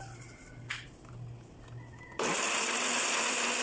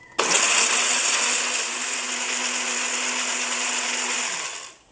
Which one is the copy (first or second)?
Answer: first